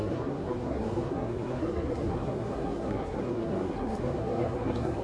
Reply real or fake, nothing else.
fake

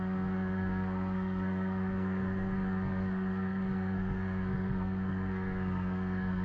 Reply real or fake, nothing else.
fake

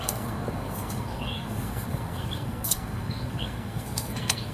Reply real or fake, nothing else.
fake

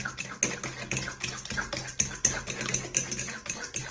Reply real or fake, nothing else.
real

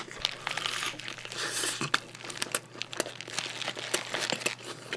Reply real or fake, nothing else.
real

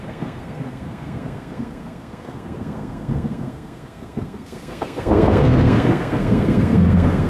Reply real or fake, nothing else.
fake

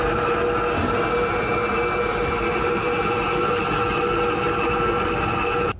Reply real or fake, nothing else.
real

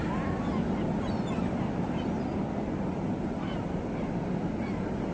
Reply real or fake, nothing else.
real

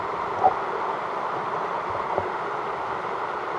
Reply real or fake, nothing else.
real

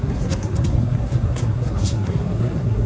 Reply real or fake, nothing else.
fake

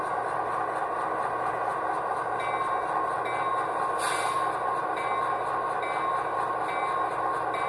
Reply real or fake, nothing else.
real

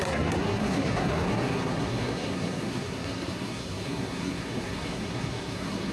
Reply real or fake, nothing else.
fake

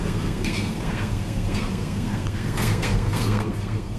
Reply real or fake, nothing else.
fake